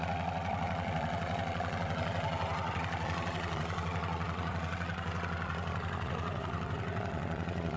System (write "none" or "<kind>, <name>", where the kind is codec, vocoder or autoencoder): vocoder, Vocos